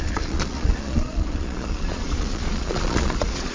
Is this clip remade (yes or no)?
yes